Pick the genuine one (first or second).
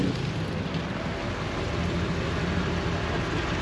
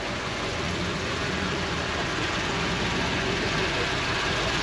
first